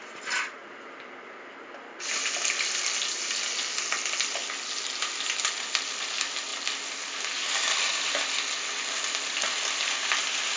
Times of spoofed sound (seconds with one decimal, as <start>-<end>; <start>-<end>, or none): none